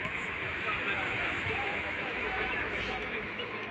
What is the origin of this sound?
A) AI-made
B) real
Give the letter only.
A